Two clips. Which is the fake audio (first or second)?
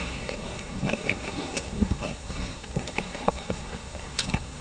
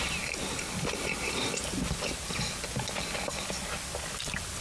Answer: first